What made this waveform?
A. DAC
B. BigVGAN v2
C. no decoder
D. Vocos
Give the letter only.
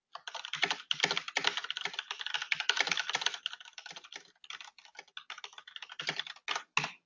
C